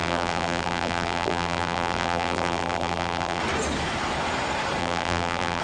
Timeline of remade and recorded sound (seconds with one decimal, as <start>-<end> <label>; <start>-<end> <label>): 0.0-3.4 remade; 3.4-4.8 recorded; 4.8-5.6 remade

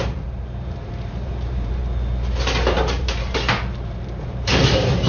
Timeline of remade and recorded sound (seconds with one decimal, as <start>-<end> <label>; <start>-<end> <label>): 0.0-1.8 remade; 1.8-2.8 recorded; 2.8-5.1 remade